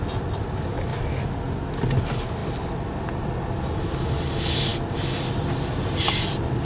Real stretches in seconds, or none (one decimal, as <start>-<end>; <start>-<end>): 0.0-6.6